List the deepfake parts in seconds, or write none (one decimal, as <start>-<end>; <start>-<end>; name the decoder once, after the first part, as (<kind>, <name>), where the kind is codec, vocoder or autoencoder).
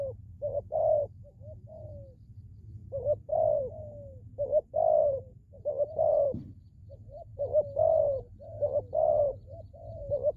2.8-3.6 (vocoder, BigVGAN v2); 5.0-6.1; 7.3-8.0